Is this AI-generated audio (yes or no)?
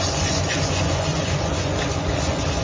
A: yes